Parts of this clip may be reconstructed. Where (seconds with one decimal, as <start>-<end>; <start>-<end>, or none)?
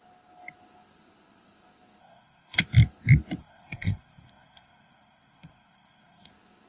2.0-2.6; 3.4-6.3